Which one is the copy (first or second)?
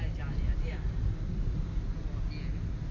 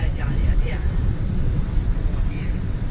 second